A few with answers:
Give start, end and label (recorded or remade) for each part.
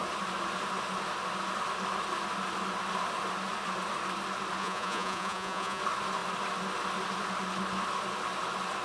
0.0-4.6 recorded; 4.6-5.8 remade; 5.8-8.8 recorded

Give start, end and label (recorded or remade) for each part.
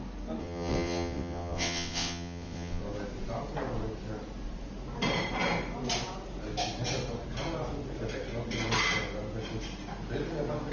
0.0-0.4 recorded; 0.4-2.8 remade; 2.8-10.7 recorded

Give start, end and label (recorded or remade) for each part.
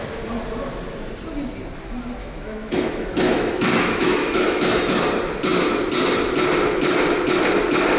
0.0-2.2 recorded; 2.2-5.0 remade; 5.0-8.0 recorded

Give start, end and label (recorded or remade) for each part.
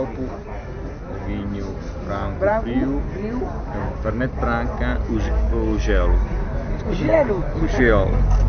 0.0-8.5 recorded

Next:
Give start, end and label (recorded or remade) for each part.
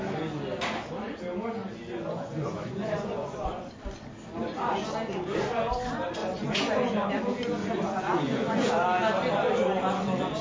0.0-1.6 recorded; 1.6-3.7 remade; 3.7-6.2 recorded; 6.2-7.1 remade; 7.1-7.6 recorded; 7.6-8.7 remade; 8.7-10.4 recorded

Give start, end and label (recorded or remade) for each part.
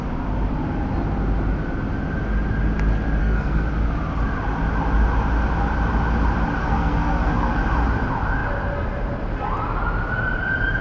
0.0-3.2 recorded; 3.2-3.7 remade; 3.7-6.6 recorded; 6.6-7.6 remade; 7.6-10.8 recorded